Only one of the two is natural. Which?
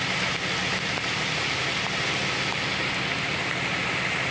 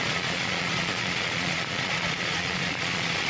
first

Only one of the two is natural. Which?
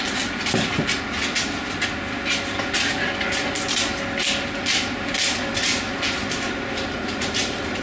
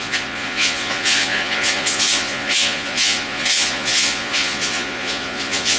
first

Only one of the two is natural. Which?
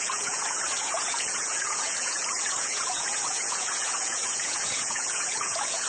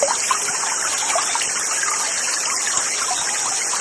second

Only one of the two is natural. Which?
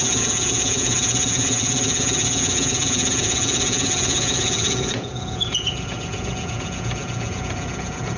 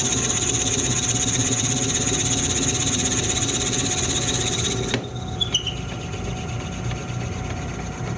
second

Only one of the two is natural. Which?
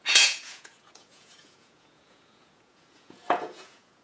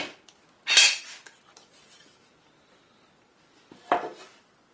second